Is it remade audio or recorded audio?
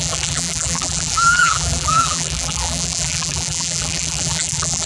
remade